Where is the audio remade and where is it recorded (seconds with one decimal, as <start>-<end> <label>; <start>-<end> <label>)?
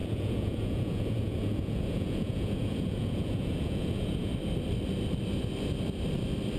0.0-4.3 remade; 4.3-6.6 recorded